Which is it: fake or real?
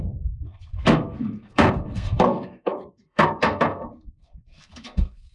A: fake